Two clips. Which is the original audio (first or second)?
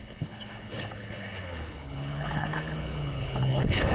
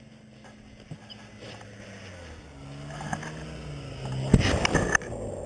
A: second